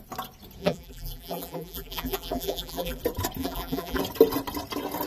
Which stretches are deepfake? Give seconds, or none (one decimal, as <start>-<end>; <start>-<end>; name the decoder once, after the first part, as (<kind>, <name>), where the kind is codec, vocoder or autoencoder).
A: 0.6-3.0 (vocoder, BigVGAN v2); 3.4-4.0

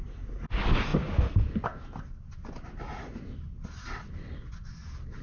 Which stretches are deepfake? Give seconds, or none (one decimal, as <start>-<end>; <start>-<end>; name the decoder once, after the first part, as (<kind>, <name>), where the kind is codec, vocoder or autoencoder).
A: none

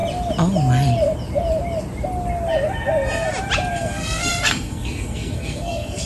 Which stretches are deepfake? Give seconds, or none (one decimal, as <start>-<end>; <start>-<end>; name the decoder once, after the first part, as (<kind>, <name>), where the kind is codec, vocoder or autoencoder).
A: 3.7-6.1 (codec, SNAC)

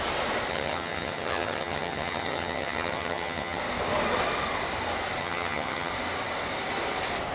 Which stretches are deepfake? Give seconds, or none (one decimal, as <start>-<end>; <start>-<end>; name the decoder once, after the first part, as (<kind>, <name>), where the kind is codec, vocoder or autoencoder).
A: 0.5-3.6 (vocoder, HiFi-GAN); 5.2-5.9

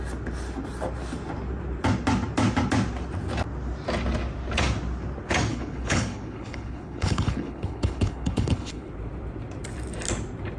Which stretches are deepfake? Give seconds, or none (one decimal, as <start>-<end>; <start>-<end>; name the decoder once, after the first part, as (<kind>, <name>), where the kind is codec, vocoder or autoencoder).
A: 5.5-8.9 (codec, HILCodec)

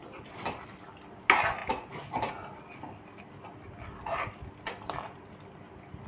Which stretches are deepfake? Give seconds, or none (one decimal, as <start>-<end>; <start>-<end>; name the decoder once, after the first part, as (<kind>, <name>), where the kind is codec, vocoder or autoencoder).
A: none

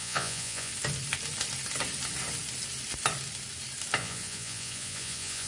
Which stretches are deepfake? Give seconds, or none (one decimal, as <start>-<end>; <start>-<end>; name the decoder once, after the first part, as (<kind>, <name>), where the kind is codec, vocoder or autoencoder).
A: 0.0-0.7 (vocoder, Vocos); 4.0-5.5